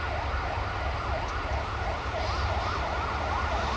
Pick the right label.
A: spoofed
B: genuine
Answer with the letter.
B